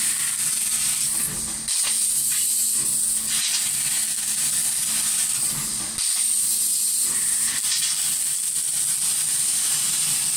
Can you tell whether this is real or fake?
real